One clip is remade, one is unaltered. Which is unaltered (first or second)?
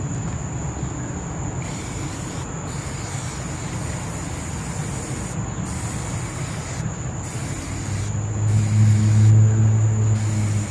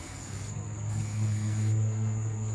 first